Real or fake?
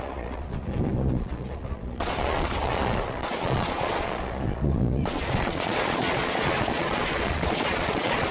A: fake